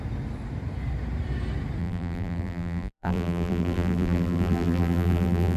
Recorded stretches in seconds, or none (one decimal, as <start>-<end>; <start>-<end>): 0.0-1.8